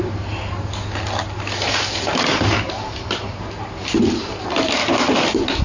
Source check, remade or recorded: remade